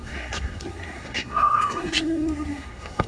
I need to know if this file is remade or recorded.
remade